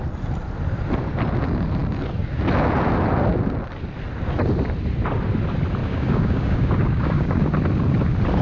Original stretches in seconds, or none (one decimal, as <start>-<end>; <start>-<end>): 0.0-5.8; 7.5-8.4